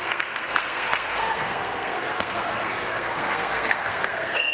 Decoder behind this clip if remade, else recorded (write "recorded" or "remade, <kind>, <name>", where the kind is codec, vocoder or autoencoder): remade, codec, SNAC